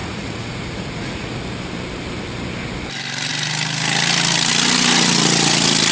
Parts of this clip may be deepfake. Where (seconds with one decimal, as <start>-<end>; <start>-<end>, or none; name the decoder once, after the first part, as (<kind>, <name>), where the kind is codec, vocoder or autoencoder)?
0.0-1.4 (vocoder, Vocos)

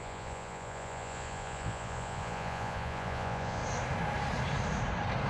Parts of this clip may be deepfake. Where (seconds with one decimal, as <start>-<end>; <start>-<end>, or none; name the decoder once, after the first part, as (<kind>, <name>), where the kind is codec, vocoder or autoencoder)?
0.0-3.6 (vocoder, Vocos)

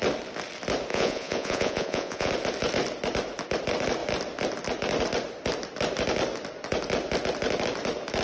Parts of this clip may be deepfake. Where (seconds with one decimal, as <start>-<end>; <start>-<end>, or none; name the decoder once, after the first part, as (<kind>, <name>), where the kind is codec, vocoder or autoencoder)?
0.9-2.3 (vocoder, Vocos)

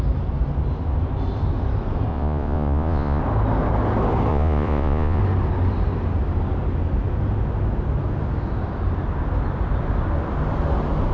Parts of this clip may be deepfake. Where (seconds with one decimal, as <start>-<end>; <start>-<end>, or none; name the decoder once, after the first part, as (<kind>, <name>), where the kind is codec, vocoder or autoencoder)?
2.1-3.2 (vocoder, Vocos); 4.3-5.2